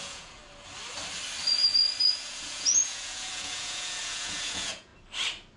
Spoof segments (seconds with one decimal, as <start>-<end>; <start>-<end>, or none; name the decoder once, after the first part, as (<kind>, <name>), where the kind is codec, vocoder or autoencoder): 0.0-0.4 (vocoder, Vocos); 2.1-4.9